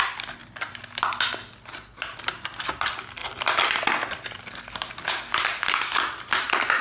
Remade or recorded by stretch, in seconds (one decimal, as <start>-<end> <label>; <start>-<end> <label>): 0.0-6.8 recorded